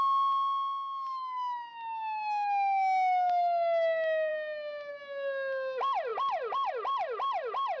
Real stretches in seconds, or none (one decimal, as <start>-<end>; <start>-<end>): 0.0-7.8